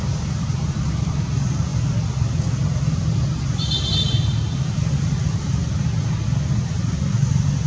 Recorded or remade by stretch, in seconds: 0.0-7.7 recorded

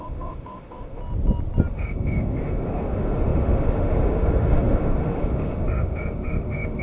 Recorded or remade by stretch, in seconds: 0.0-1.0 remade; 1.0-1.7 recorded; 1.7-6.8 remade

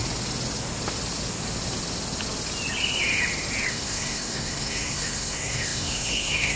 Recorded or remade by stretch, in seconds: 0.0-3.7 recorded; 3.7-6.6 remade

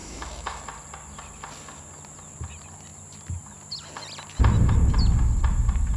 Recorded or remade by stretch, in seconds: 0.0-0.6 remade; 0.6-6.0 recorded